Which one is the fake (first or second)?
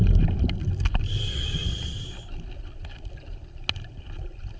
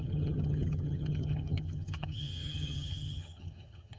second